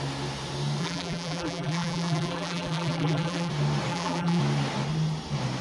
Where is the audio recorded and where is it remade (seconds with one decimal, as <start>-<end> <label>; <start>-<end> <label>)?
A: 0.0-0.8 recorded; 0.8-3.5 remade; 3.5-3.9 recorded; 3.9-4.4 remade; 4.4-5.6 recorded